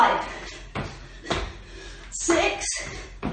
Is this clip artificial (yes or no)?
no